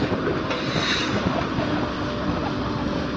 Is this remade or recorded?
recorded